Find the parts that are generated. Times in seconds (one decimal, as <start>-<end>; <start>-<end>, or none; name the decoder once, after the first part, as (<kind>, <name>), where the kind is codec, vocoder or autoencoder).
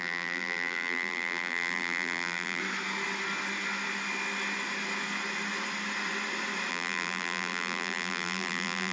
0.0-2.6 (vocoder, BigVGAN v2); 6.7-8.9